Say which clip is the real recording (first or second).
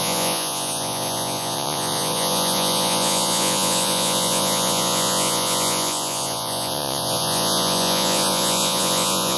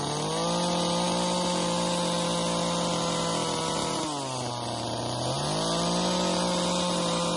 second